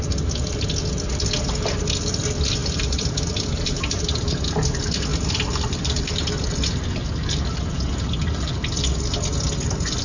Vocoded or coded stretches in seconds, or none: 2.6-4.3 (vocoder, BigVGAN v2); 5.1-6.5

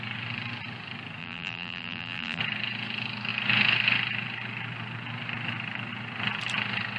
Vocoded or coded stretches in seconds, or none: 1.2-2.4 (vocoder, BigVGAN v2)

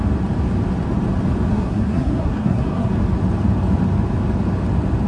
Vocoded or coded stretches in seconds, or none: 1.5-2.9 (codec, SNAC)

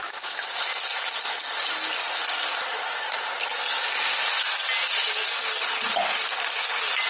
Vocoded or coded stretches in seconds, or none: none

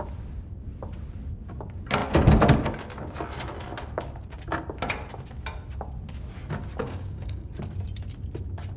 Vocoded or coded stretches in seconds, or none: 6.8-7.5 (codec, DAC)

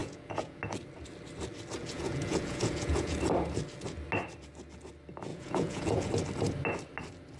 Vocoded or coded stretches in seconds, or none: 0.0-0.6 (vocoder, Vocos); 1.8-3.2; 5.3-6.1

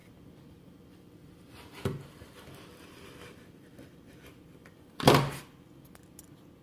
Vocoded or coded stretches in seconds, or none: 0.0-4.0 (vocoder, BigVGAN v2); 4.6-5.4

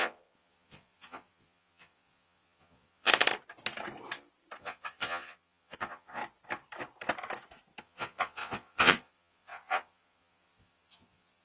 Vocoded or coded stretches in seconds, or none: 0.0-3.1 (vocoder, Vocos); 4.6-6.2; 7.8-11.4